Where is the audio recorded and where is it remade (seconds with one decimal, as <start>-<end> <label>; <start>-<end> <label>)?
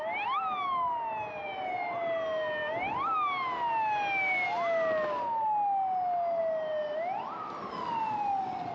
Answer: 0.0-8.7 recorded